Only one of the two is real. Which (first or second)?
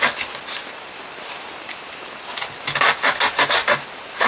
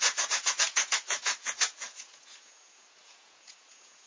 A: first